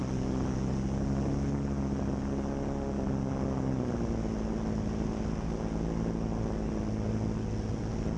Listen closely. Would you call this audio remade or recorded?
recorded